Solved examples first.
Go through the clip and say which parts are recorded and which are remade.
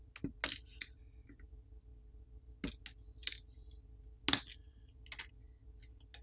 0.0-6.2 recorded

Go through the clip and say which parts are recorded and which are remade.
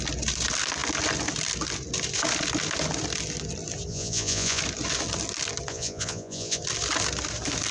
0.0-3.9 recorded; 3.9-4.6 remade; 4.6-5.7 recorded; 5.7-6.6 remade; 6.6-7.7 recorded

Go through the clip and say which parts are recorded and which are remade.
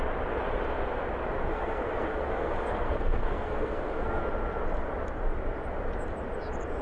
0.0-1.5 recorded; 1.5-4.2 remade; 4.2-6.8 recorded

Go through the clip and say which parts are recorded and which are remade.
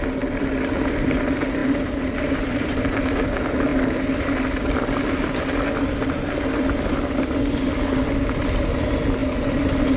0.0-10.0 recorded